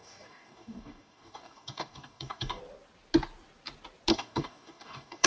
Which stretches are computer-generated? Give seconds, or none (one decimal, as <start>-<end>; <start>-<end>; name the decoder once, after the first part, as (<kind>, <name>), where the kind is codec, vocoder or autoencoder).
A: 0.0-2.6 (codec, DAC); 4.1-5.3